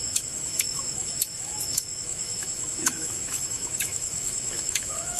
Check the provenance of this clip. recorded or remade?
remade